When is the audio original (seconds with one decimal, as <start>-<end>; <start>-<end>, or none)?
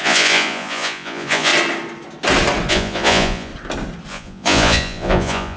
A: 1.5-2.7; 3.5-4.1